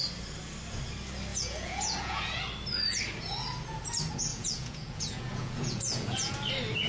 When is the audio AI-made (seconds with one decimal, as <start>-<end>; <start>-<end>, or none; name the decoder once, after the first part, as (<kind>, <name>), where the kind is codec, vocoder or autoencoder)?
1.3-2.4 (vocoder, Vocos); 4.3-6.3